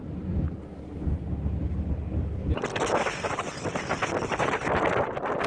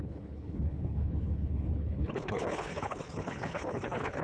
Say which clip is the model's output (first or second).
second